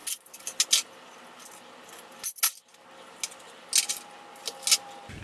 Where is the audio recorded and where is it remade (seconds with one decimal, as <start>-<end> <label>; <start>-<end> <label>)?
0.0-5.2 recorded